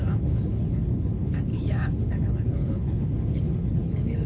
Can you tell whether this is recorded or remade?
remade